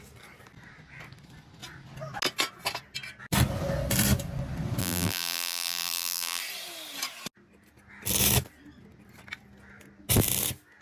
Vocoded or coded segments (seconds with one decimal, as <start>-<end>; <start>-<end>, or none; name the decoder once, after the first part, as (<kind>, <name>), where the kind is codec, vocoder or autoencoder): 4.8-6.4 (vocoder, BigVGAN v2)